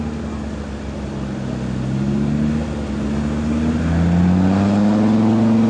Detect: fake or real real